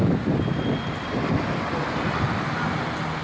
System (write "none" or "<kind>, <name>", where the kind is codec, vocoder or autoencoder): none